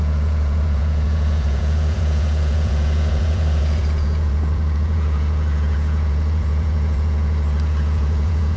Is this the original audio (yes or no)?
no